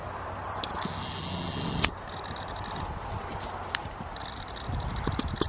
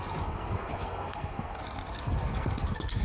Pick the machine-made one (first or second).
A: second